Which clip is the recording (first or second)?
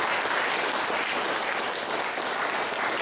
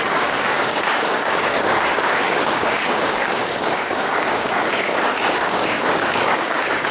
first